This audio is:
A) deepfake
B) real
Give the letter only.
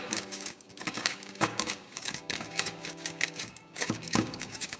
A